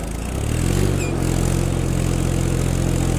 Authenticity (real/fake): real